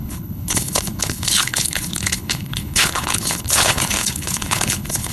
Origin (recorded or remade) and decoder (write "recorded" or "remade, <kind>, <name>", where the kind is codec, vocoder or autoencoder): remade, codec, HILCodec